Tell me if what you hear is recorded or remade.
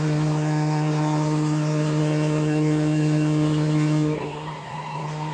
remade